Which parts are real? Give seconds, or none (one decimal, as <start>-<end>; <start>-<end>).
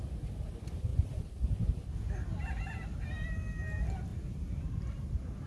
0.0-0.9; 3.1-4.1